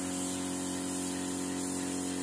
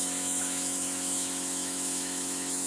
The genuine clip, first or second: first